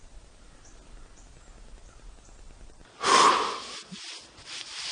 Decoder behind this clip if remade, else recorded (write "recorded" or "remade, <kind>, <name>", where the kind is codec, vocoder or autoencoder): recorded